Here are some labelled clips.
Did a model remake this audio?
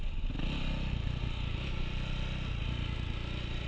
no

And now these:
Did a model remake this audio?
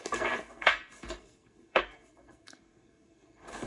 yes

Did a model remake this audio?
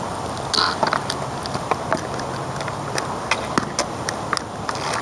no